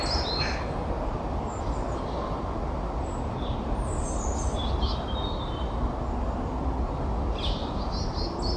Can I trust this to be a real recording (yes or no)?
yes